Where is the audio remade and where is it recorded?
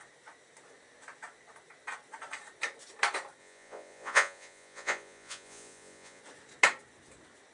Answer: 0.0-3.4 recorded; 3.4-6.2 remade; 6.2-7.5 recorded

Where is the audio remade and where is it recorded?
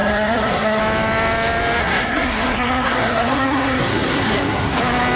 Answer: 0.0-0.8 remade; 0.8-1.8 recorded; 1.8-4.8 remade; 4.8-5.2 recorded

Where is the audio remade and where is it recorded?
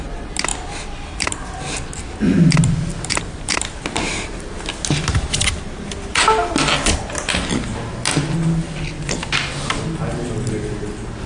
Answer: 0.0-11.3 recorded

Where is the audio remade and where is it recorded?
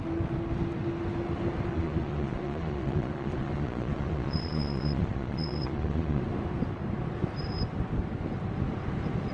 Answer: 0.0-1.7 recorded; 1.7-6.2 remade; 6.2-9.3 recorded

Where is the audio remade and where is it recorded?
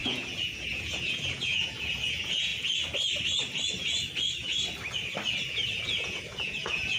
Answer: 0.0-2.5 remade; 2.5-5.8 recorded; 5.8-7.0 remade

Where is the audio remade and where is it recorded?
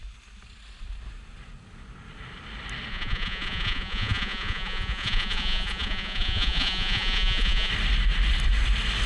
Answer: 0.0-2.9 recorded; 2.9-7.7 remade; 7.7-9.1 recorded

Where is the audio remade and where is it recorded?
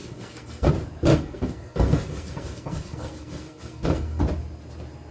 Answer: 0.0-0.7 remade; 0.7-1.1 recorded; 1.1-4.2 remade; 4.2-5.1 recorded